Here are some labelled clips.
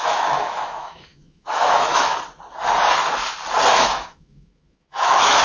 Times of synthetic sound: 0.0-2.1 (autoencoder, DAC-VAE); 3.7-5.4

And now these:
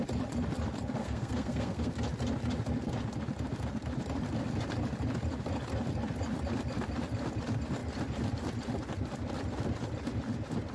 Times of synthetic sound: 1.0-1.9 (codec, SNAC)

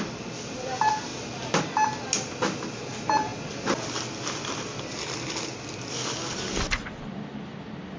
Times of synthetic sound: none